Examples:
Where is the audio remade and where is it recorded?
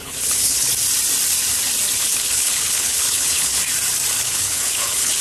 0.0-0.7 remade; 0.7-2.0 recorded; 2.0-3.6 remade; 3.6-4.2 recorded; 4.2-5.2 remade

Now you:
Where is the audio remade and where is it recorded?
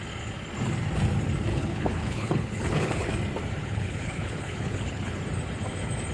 0.0-1.5 recorded; 1.5-3.1 remade; 3.1-3.6 recorded; 3.6-5.2 remade; 5.2-6.1 recorded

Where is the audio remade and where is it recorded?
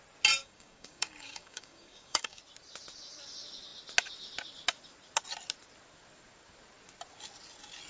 0.0-0.4 recorded; 0.4-2.4 remade; 2.4-7.9 recorded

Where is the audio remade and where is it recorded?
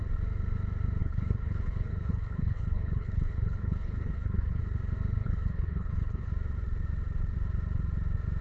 0.0-1.0 recorded; 1.0-4.6 remade; 4.6-5.2 recorded; 5.2-6.3 remade; 6.3-8.4 recorded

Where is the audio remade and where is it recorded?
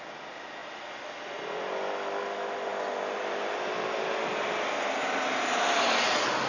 0.0-6.5 recorded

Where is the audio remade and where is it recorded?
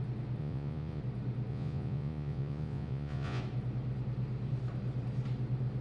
0.0-0.4 recorded; 0.4-1.0 remade; 1.0-1.5 recorded; 1.5-3.4 remade; 3.4-5.8 recorded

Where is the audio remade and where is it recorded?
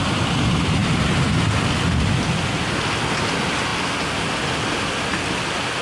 0.0-5.8 recorded